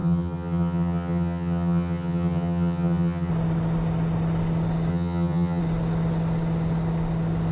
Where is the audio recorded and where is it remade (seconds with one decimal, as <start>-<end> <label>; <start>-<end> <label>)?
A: 0.0-3.3 remade; 3.3-4.9 recorded; 4.9-5.6 remade; 5.6-7.5 recorded

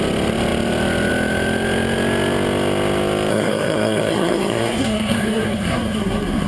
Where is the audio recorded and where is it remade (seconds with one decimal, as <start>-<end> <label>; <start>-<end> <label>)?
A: 0.0-3.3 recorded; 3.3-6.5 remade